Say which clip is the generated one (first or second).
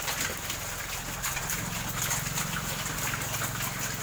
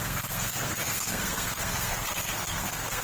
second